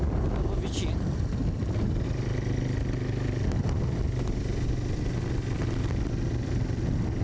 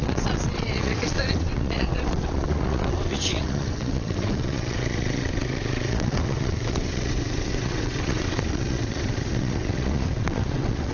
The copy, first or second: second